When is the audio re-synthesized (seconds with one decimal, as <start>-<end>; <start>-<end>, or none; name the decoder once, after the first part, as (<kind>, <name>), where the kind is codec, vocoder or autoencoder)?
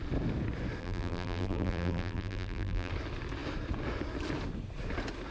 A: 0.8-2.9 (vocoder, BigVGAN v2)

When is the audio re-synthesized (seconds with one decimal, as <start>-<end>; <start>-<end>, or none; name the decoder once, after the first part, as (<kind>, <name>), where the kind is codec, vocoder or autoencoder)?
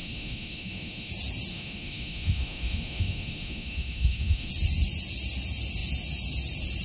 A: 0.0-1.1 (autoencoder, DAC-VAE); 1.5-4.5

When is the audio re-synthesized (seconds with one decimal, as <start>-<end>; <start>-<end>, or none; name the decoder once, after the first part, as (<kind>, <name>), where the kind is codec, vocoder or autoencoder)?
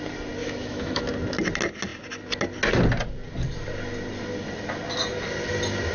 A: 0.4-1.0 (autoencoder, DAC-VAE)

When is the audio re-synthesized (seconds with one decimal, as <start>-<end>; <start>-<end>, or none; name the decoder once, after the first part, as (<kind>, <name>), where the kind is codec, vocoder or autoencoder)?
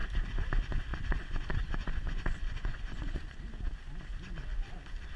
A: 0.9-3.4 (vocoder, Vocos)